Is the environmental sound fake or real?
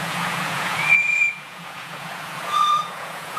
fake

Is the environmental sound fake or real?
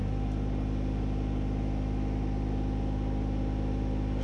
real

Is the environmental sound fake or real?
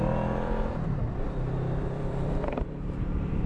fake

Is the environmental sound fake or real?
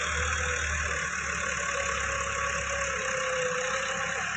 real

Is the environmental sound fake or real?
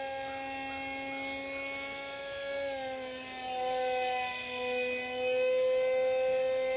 real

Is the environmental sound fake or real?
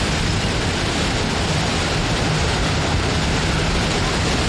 real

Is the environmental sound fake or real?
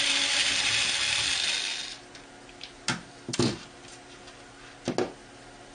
real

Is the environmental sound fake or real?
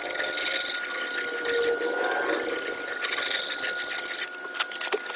real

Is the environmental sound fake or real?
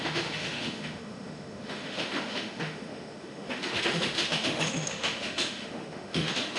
fake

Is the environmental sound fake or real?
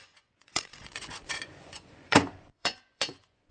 fake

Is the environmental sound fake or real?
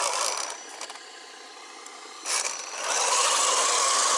fake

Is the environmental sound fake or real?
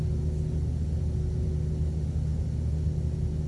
real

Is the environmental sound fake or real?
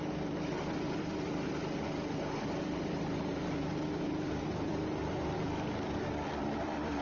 fake